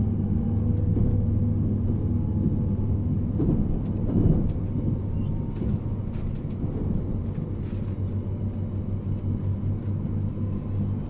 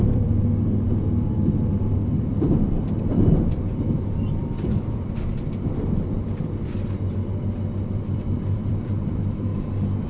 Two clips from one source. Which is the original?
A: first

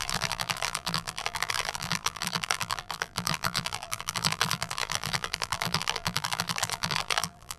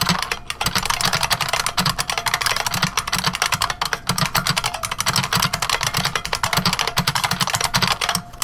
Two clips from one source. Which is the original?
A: second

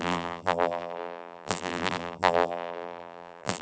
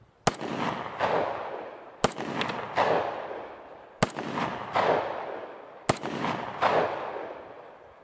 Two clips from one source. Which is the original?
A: second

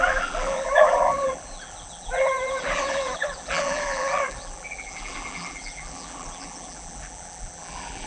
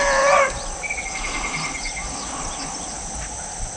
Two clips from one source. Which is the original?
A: second